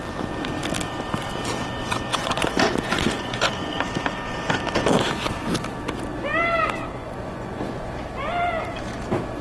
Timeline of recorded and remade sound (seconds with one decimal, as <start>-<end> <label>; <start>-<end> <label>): 0.0-2.1 recorded; 2.1-3.6 remade; 3.6-7.0 recorded; 7.0-7.9 remade; 7.9-9.4 recorded